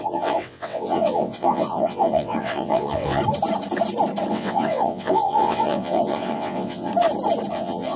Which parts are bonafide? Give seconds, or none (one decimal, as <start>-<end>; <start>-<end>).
3.2-4.3; 6.9-7.5